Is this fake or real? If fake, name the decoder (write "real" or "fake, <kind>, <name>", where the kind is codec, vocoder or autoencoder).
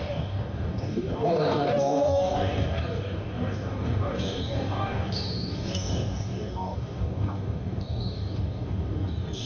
fake, codec, DAC